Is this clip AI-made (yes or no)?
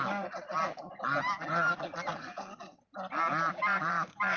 no